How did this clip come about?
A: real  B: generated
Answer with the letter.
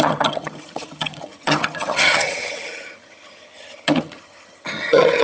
B